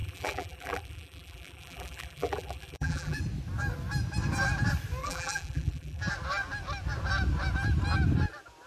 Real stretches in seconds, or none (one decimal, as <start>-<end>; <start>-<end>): 3.2-5.0; 6.0-8.7